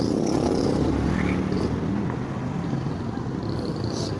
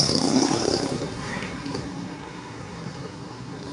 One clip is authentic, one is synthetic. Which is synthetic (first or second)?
second